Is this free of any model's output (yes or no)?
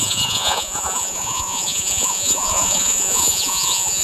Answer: no